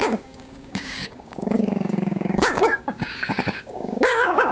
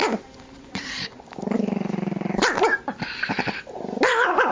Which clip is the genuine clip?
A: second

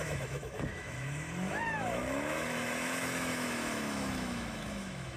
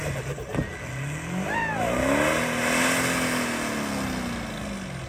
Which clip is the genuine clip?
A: second